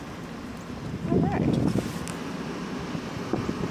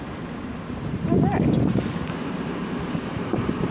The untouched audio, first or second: first